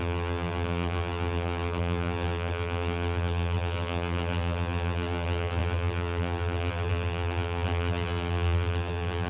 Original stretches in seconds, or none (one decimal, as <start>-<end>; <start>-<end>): none